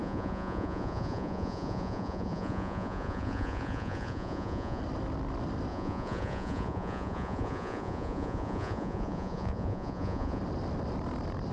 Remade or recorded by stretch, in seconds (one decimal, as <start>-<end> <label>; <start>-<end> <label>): 0.0-4.8 remade; 4.8-5.7 recorded; 5.7-10.4 remade; 10.4-11.5 recorded

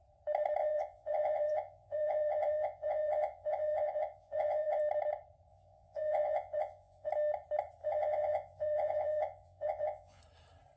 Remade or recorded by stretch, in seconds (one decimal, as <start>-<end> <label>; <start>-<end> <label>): 0.0-0.6 recorded; 0.6-4.8 remade; 4.8-5.5 recorded; 5.5-7.1 remade; 7.1-7.8 recorded; 7.8-10.2 remade; 10.2-10.8 recorded

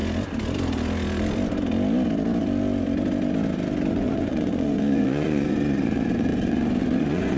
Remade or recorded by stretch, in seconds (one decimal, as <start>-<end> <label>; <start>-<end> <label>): 0.0-3.9 recorded; 3.9-7.4 remade

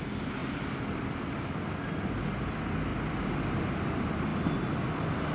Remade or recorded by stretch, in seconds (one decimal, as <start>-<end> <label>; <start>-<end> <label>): 0.0-5.3 recorded

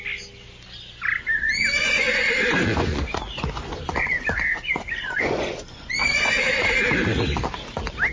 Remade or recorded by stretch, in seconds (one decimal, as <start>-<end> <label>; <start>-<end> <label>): 0.0-1.8 recorded; 1.8-6.3 remade; 6.3-8.1 recorded

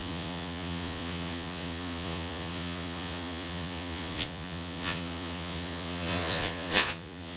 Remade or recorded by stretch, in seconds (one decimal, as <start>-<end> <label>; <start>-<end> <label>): 0.0-7.4 remade